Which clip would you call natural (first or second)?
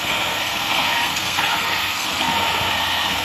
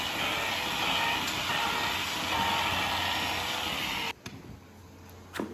second